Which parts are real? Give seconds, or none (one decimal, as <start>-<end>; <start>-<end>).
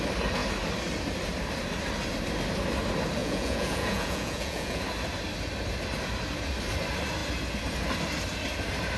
0.0-3.2; 4.8-9.0